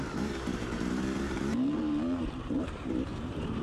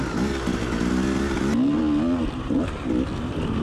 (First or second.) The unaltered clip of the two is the second